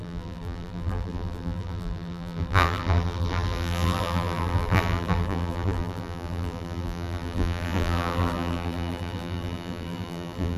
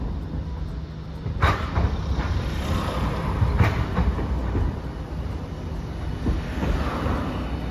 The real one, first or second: second